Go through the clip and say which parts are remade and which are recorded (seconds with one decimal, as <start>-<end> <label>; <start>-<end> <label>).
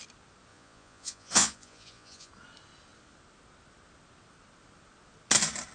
0.0-0.5 recorded; 0.5-2.3 remade; 2.3-5.7 recorded